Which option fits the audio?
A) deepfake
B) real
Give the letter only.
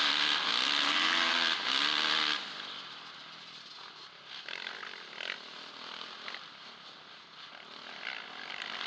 B